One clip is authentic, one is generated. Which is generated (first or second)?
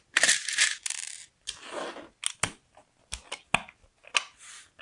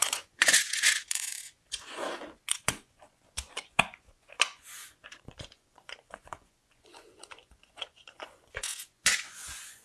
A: second